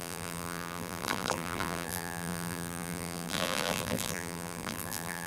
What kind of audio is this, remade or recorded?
remade